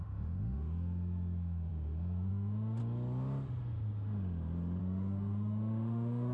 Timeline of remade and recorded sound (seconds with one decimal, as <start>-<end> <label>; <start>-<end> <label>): 0.0-2.8 remade; 2.8-4.8 recorded; 4.8-6.3 remade